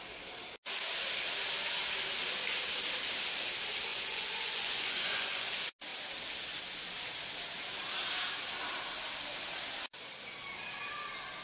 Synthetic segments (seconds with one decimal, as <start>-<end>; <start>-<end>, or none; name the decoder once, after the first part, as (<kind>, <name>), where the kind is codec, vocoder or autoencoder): 3.9-5.5 (vocoder, Vocos)